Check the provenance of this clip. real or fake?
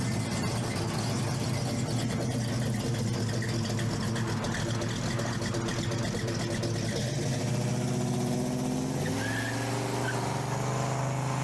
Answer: real